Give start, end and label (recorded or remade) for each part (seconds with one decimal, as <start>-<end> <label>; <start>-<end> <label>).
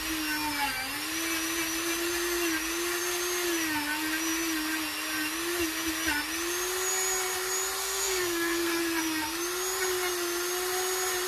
0.0-7.8 recorded; 7.8-8.8 remade; 8.8-11.3 recorded